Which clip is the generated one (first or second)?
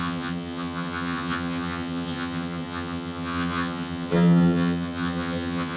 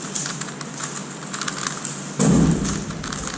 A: first